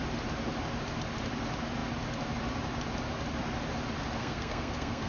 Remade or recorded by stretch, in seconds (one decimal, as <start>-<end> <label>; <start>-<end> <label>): 0.0-4.2 recorded; 4.2-5.1 remade